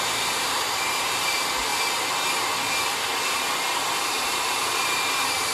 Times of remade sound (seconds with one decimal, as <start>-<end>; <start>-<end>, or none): 0.0-1.7; 3.2-5.5

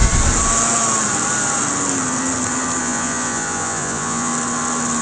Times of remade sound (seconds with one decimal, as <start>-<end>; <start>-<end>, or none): 2.8-4.3

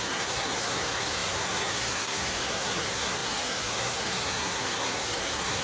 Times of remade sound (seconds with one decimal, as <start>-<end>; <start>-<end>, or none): 0.0-5.6

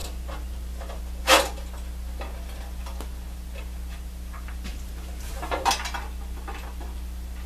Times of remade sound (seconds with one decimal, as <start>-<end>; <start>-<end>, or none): 0.0-1.0; 4.7-5.7

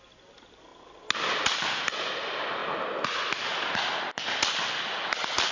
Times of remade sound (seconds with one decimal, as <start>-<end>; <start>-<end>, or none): none

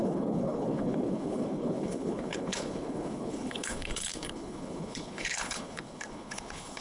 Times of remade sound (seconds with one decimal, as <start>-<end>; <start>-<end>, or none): 0.0-6.8